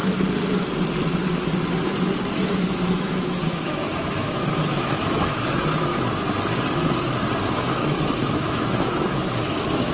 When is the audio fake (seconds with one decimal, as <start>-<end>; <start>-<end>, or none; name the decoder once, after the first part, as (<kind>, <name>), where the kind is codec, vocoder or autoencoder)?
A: 2.4-5.9 (autoencoder, DAC-VAE); 7.5-9.9